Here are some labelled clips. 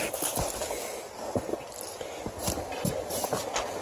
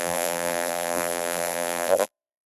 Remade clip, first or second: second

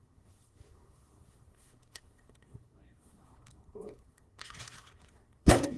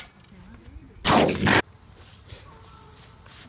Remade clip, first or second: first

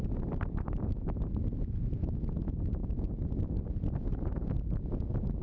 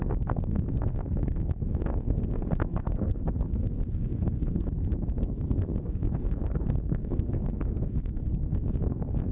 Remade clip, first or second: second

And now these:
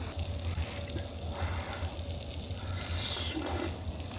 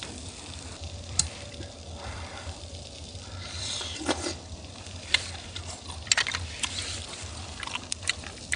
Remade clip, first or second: second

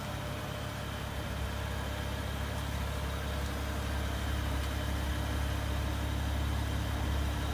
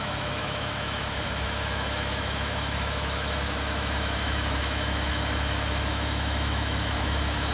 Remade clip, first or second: second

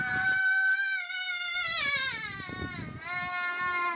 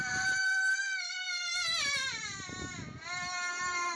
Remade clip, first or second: second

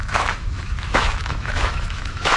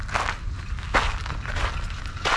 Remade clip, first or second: first